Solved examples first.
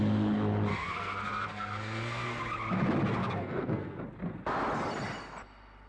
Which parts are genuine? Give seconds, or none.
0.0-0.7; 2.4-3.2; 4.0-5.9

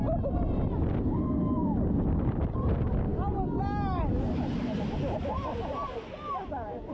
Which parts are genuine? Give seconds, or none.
0.0-6.9

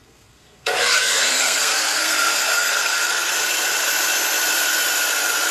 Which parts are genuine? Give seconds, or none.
3.3-5.5

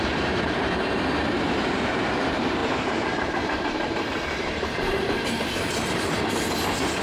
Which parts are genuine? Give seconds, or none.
none

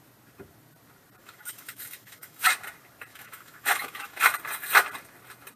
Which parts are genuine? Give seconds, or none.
0.0-1.2; 2.5-3.1; 4.2-5.6

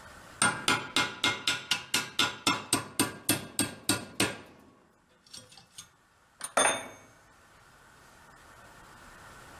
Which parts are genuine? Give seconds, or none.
0.0-9.6

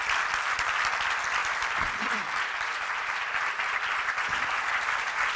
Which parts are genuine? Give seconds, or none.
0.0-1.4; 4.6-5.4

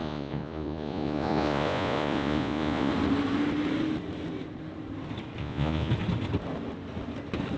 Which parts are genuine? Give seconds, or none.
2.9-5.4; 5.9-7.6